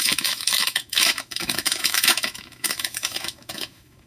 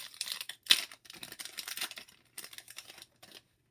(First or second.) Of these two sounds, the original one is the second